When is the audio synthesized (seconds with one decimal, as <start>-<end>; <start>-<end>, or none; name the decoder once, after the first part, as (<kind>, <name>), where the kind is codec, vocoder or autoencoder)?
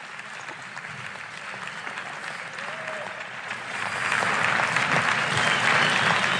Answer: 3.0-3.9 (vocoder, Vocos)